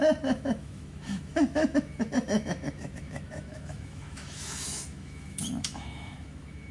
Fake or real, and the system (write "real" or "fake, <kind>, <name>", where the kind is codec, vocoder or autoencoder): fake, autoencoder, DAC-VAE